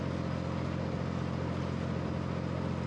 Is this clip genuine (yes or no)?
yes